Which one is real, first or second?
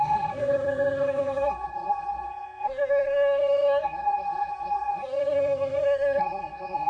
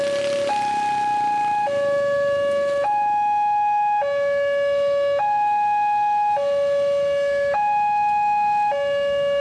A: second